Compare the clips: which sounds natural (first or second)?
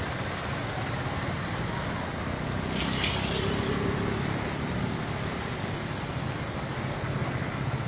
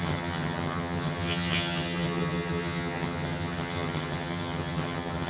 first